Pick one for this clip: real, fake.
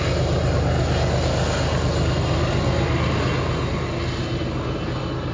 real